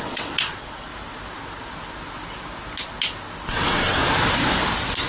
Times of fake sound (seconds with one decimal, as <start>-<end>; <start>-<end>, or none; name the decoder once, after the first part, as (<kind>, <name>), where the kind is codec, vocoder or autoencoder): 0.0-0.9 (vocoder, WaveNeXt); 3.5-4.0